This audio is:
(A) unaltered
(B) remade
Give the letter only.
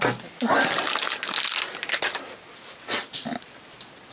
A